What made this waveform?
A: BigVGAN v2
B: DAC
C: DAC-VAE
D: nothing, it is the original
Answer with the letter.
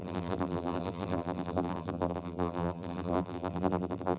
A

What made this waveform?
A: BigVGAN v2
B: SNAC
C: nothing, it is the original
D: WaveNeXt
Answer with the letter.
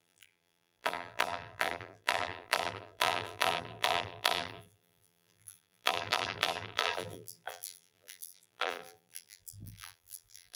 A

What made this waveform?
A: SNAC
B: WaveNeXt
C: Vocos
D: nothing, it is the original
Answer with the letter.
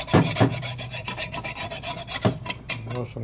D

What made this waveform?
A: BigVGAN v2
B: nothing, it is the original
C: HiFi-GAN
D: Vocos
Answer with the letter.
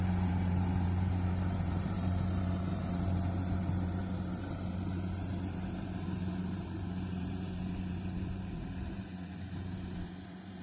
A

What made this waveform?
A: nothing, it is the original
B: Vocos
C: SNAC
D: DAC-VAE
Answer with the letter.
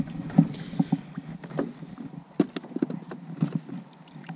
A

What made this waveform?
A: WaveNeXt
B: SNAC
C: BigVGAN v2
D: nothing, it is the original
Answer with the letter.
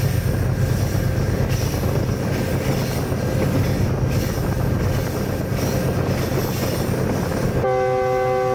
D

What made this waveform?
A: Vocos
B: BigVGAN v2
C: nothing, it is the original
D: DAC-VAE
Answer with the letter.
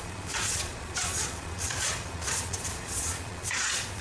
A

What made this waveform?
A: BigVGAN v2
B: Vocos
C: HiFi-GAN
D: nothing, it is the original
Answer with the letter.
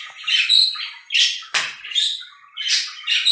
D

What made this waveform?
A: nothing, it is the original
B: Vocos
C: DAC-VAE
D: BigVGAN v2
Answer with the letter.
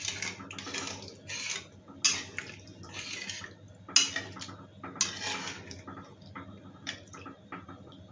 A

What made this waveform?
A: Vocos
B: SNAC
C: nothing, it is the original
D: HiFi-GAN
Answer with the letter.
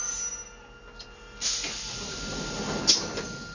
C